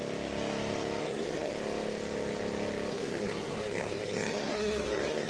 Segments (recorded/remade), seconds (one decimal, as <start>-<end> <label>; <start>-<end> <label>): 0.0-1.0 recorded; 1.0-1.5 remade; 1.5-2.9 recorded; 2.9-5.3 remade